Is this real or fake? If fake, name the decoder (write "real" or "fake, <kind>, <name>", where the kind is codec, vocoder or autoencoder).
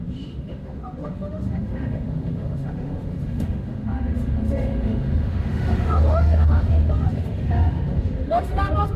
fake, autoencoder, DAC-VAE